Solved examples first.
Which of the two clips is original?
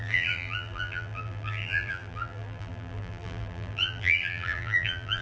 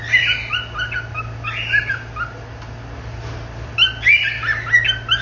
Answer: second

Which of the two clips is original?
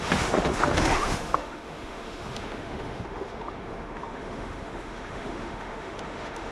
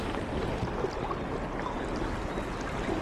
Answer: second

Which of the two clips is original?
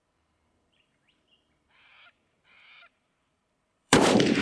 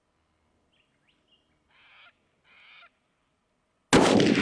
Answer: second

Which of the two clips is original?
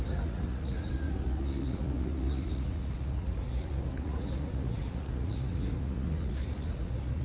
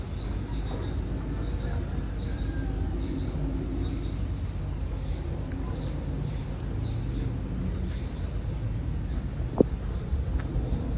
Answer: second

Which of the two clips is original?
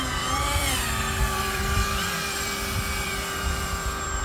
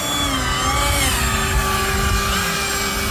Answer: second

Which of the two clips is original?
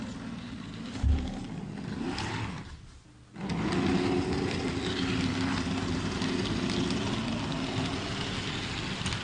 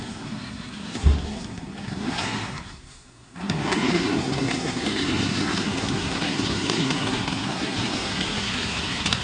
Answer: first